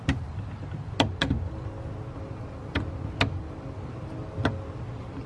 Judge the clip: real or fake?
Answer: real